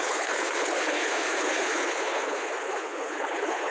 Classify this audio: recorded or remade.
remade